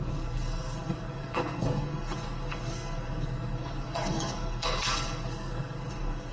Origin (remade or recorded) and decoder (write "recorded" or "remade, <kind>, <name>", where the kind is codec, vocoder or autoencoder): remade, codec, SNAC